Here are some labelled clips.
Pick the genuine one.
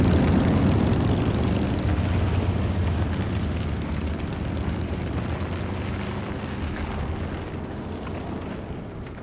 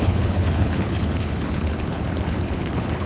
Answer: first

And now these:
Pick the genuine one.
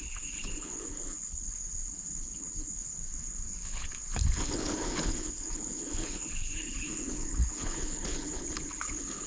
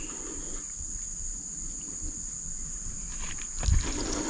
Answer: second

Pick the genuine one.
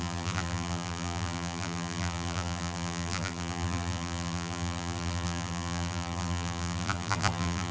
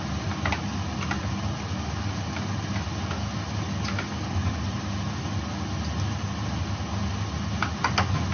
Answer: second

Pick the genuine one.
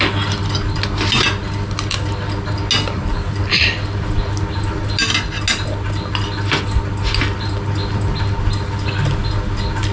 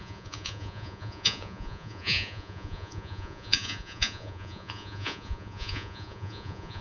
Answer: first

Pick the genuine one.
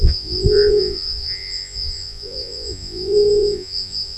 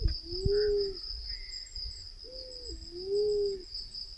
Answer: second